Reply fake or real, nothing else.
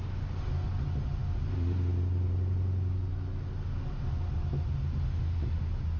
real